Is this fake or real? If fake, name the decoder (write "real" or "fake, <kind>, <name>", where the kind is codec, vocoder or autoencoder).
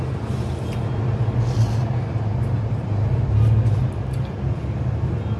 real